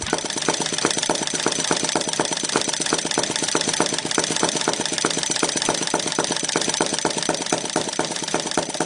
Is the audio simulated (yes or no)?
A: no